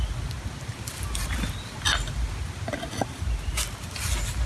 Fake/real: real